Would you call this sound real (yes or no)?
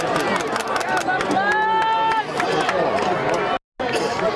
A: yes